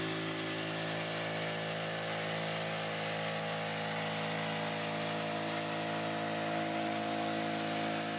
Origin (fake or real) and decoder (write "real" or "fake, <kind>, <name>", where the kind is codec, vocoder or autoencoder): real